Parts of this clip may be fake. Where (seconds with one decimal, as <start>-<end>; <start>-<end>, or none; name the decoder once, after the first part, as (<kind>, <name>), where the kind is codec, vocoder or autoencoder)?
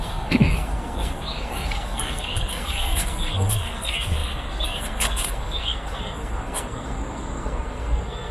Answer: 0.0-8.3 (codec, SNAC)